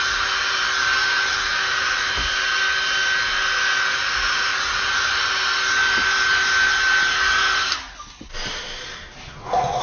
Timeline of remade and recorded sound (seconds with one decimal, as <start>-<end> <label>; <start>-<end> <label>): 0.0-9.8 recorded